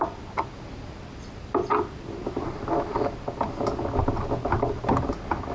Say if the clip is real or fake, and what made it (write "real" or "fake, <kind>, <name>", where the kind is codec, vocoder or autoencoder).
real